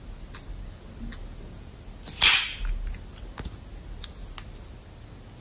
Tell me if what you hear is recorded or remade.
recorded